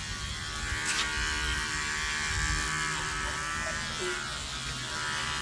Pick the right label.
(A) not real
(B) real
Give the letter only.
B